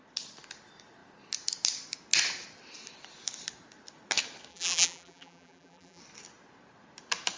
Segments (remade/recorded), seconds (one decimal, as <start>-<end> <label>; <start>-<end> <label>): 0.0-4.5 recorded; 4.5-6.0 remade; 6.0-7.4 recorded